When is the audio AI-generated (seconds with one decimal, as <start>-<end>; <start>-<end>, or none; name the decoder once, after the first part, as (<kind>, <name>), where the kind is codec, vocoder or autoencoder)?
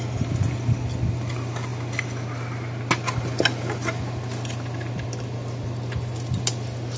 none